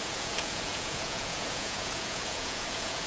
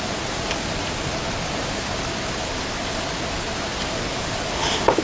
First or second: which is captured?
second